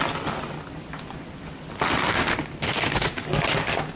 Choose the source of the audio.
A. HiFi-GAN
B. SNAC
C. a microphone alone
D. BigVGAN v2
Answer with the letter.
C